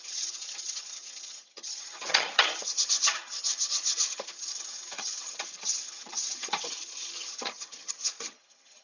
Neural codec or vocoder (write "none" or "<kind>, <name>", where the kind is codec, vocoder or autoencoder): vocoder, HiFi-GAN